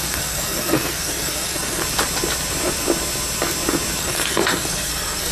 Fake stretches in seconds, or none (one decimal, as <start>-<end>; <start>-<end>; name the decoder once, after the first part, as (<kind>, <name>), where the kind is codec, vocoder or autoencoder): 0.0-1.8 (codec, SNAC); 4.0-5.3